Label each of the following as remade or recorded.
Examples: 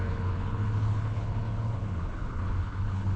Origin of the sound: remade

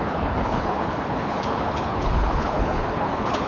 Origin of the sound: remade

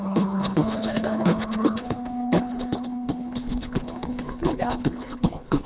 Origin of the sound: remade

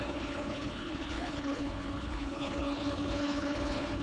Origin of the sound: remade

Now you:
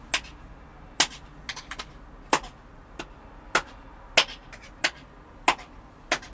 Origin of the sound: recorded